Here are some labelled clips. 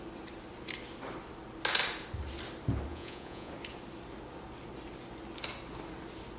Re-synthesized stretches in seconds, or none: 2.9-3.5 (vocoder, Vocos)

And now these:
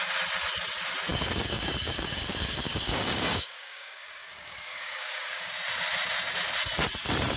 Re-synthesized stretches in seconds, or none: 1.1-5.5 (codec, DAC)

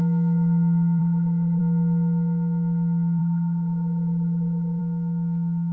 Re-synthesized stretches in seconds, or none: 1.0-1.6 (autoencoder, DAC-VAE); 3.2-4.8